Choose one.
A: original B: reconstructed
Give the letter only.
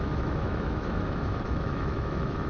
B